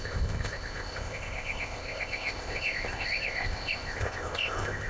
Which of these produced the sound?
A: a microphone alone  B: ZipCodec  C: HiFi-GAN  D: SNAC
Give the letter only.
B